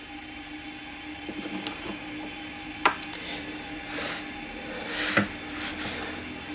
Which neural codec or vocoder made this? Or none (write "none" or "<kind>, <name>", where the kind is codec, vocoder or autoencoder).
none